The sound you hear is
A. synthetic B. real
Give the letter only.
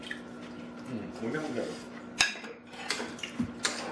B